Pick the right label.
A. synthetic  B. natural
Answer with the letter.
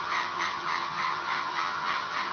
A